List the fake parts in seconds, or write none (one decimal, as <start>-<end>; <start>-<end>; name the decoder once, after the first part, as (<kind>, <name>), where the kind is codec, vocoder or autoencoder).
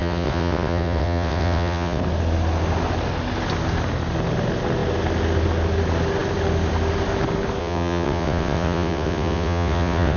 0.0-2.0 (vocoder, WaveNeXt); 7.6-10.2